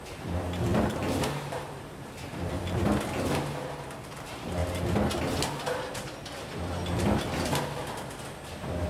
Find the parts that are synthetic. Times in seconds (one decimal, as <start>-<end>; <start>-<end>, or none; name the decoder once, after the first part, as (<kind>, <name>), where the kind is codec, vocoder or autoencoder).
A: 0.7-2.8 (vocoder, BigVGAN v2)